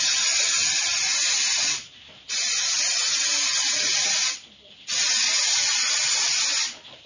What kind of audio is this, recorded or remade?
recorded